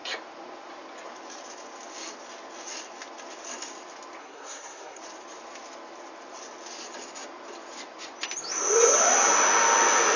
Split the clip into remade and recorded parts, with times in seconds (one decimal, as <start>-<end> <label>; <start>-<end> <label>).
0.0-4.2 recorded; 4.2-5.0 remade; 5.0-10.2 recorded